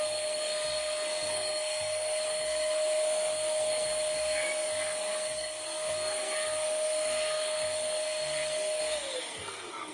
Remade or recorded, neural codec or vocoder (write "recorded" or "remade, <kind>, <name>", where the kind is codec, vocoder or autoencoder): remade, codec, SNAC